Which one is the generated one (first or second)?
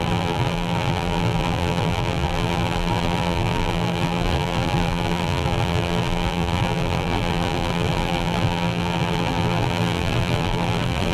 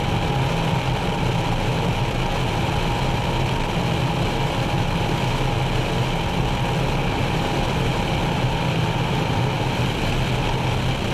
first